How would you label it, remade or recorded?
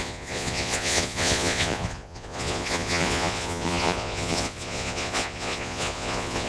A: remade